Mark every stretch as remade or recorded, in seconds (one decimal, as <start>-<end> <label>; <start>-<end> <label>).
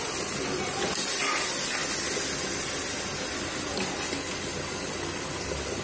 0.0-5.8 recorded